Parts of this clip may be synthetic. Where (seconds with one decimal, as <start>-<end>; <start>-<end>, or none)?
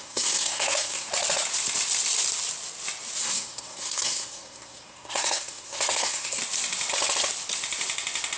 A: 0.0-1.1; 3.2-6.4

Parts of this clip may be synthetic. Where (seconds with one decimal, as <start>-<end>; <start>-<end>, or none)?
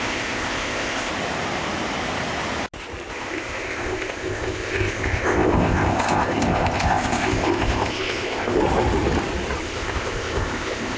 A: 0.0-1.1; 3.1-8.6; 9.6-11.0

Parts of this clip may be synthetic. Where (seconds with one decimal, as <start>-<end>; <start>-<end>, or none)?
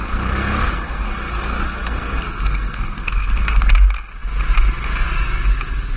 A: 0.0-3.6